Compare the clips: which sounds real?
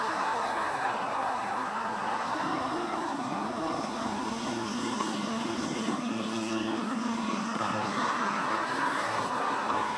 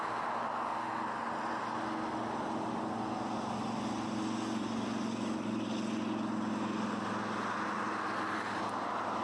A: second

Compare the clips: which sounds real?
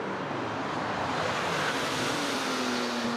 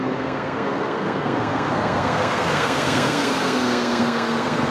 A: first